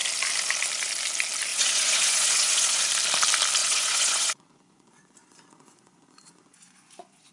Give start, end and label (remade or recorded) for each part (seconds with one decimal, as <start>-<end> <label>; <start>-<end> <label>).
0.0-1.5 recorded; 1.5-2.9 remade; 2.9-3.6 recorded; 3.6-7.3 remade